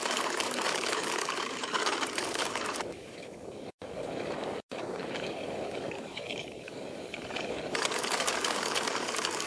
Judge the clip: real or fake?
fake